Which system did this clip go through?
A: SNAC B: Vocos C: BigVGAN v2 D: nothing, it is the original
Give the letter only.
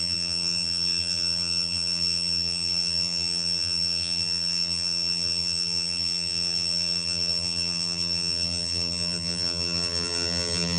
C